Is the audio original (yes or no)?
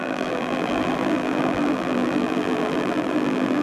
no